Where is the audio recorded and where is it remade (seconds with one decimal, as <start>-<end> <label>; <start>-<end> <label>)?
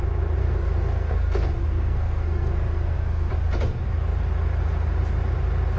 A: 0.0-0.4 recorded; 0.4-3.3 remade; 3.3-5.8 recorded